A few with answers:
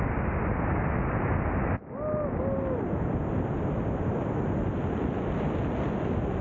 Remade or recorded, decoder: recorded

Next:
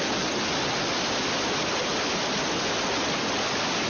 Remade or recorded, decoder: recorded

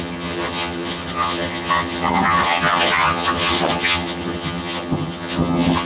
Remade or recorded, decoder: remade, vocoder, HiFi-GAN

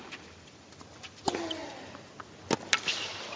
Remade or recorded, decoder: recorded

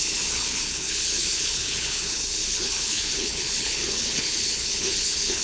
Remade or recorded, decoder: remade, codec, HILCodec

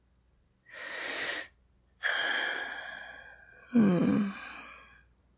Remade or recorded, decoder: recorded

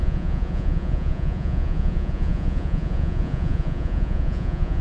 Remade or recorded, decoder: remade, vocoder, Vocos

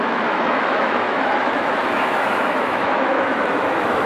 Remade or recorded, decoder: remade, autoencoder, DAC-VAE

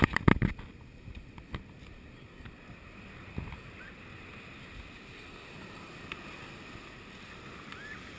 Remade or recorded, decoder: recorded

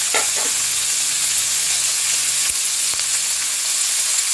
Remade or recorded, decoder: remade, vocoder, Vocos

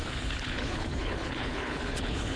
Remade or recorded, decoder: remade, codec, HILCodec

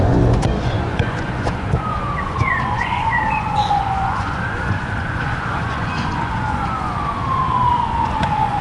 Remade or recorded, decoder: remade, vocoder, Vocos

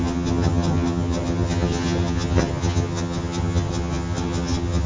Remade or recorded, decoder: remade, vocoder, HiFi-GAN